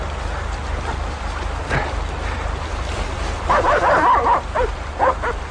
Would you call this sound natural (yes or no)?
no